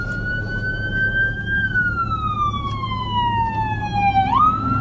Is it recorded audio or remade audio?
recorded